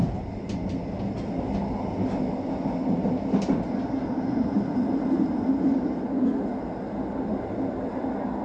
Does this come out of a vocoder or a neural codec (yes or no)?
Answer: no